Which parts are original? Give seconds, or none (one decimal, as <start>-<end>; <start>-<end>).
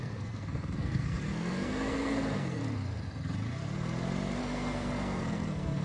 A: 2.6-4.4